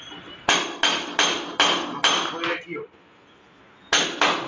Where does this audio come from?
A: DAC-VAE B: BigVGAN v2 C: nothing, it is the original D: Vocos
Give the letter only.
C